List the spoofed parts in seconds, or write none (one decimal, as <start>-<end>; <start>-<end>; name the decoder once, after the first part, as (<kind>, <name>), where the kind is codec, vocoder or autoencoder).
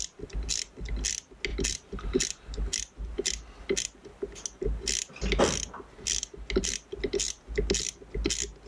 none